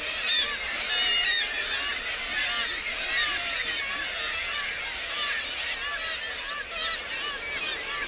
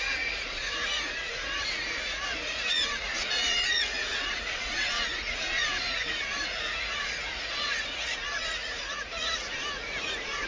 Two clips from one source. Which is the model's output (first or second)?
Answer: second